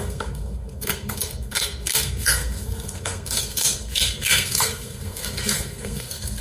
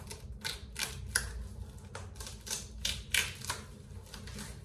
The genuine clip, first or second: second